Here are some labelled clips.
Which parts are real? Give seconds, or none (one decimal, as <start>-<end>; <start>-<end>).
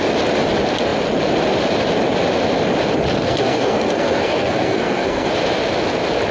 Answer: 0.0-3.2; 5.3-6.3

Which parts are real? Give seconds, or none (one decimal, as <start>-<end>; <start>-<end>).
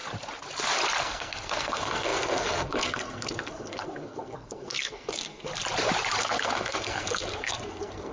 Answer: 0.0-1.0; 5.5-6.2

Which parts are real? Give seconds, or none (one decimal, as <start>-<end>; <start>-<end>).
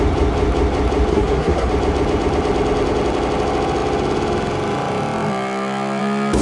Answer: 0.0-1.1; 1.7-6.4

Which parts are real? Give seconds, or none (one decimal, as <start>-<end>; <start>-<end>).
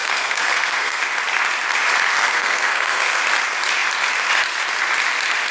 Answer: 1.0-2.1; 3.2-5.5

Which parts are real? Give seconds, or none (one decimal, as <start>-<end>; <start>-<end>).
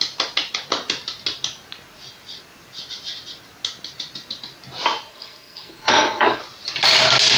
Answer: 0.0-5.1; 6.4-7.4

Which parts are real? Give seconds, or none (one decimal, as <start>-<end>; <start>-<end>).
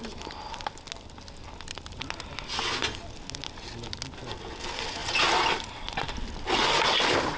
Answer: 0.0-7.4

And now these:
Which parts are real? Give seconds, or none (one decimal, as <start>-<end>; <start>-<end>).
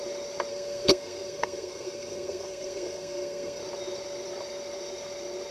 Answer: 0.0-0.5; 3.6-5.5